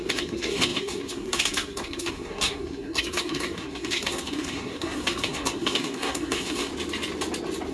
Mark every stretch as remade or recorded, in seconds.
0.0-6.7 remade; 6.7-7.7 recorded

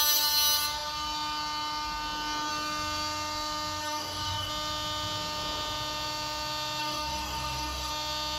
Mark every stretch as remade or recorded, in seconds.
0.0-3.8 recorded; 3.8-4.5 remade; 4.5-6.8 recorded; 6.8-7.9 remade; 7.9-8.4 recorded